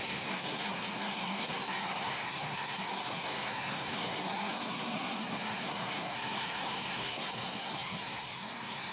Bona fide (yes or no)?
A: no